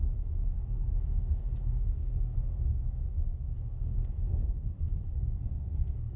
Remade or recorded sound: remade